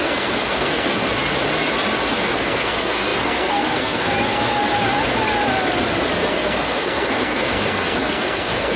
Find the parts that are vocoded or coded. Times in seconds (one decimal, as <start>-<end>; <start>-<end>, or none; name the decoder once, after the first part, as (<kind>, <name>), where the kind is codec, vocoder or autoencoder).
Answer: 0.0-1.0 (codec, SNAC); 2.1-4.6; 6.3-8.8